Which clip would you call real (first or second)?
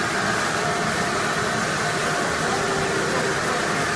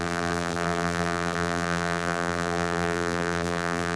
first